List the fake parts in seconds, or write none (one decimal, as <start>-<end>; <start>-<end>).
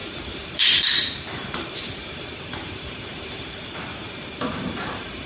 0.0-5.3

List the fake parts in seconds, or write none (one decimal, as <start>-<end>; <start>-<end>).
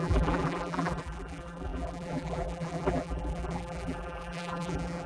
0.0-5.1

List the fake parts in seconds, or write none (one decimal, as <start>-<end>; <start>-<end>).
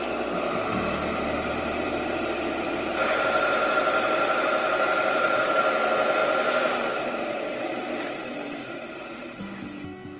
1.0-5.6